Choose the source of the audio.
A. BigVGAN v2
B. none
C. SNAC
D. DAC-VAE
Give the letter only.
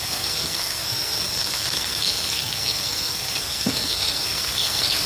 C